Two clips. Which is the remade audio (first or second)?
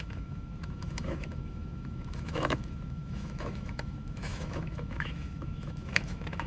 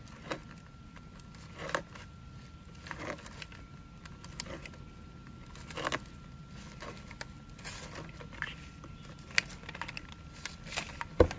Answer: first